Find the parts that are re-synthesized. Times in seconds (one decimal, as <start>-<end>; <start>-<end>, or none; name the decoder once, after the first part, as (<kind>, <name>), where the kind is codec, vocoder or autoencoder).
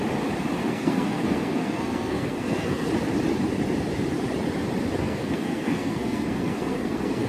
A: 0.6-2.9 (codec, SNAC); 5.0-7.3